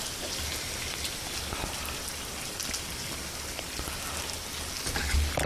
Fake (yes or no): no